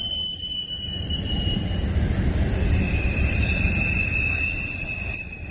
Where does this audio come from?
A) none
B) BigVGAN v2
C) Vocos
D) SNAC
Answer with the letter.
B